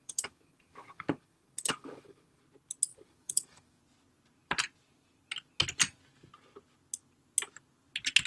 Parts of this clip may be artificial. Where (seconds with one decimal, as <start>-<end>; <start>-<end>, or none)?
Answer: 0.0-2.4; 2.9-3.8